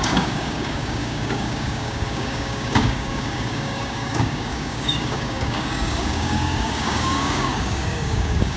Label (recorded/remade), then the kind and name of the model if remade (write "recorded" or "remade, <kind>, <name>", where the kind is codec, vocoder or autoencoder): remade, codec, DAC